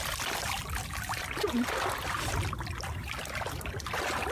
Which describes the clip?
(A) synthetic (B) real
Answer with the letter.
B